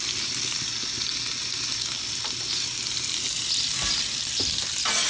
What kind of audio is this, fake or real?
real